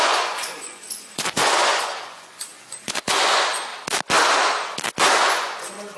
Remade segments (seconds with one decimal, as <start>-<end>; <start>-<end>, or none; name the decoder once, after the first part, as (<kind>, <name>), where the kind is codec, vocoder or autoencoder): 0.0-3.7 (vocoder, Vocos); 5.2-6.0